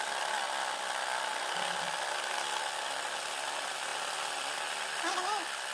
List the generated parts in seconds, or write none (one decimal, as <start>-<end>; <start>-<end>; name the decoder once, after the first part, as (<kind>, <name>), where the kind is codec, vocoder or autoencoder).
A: 3.9-4.7 (vocoder, BigVGAN v2)